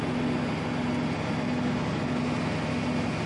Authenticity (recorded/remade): recorded